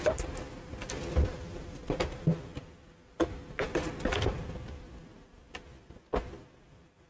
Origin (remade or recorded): recorded